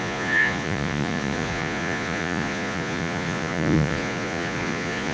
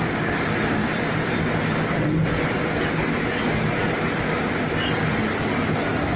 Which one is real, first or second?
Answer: second